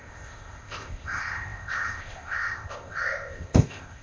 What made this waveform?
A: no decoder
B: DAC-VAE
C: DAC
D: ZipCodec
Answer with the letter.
D